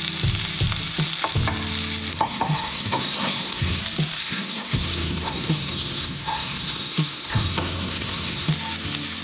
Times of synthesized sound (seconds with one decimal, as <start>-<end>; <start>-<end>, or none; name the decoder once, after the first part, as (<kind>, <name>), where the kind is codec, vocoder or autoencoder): 2.1-3.8 (codec, SNAC); 4.2-8.5